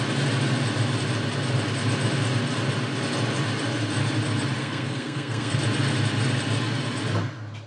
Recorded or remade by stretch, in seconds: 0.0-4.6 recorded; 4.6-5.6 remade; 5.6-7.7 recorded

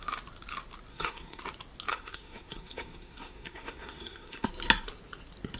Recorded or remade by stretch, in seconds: 0.0-0.9 recorded; 0.9-1.4 remade; 1.4-1.9 recorded; 1.9-4.5 remade; 4.5-5.6 recorded

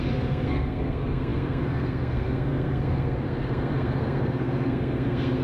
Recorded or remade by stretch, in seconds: 0.0-5.4 remade

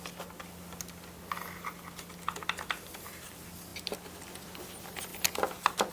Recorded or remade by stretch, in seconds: 0.0-5.9 recorded

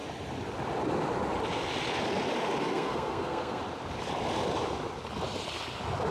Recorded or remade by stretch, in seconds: 0.0-2.6 recorded; 2.6-3.6 remade; 3.6-6.1 recorded